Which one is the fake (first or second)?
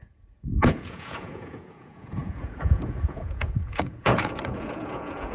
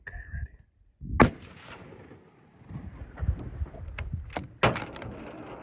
first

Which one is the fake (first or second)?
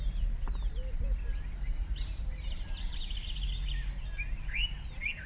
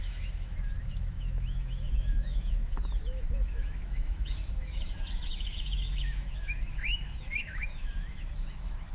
second